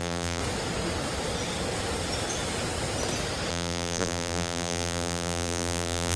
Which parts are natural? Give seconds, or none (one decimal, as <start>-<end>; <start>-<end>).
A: 0.4-3.5